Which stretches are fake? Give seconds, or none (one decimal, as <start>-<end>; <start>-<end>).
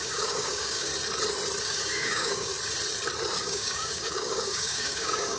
0.0-0.9; 1.6-2.5; 3.4-5.4